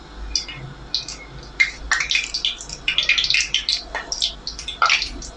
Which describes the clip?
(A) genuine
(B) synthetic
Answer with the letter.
A